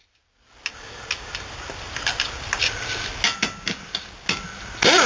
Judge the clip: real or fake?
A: real